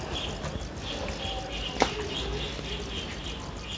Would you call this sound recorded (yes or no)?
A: yes